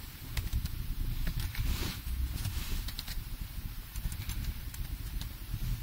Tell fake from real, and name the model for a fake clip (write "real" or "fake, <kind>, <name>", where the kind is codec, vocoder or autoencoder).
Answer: fake, vocoder, BigVGAN v2